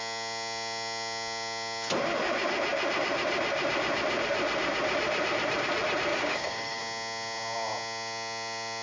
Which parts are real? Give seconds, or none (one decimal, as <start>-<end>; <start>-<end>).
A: 0.0-6.1; 6.8-8.8